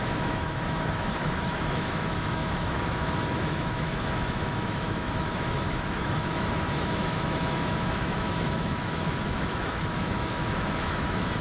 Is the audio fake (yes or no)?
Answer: yes